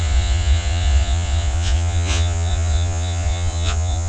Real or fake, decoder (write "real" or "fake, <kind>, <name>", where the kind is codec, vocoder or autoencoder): fake, vocoder, Vocos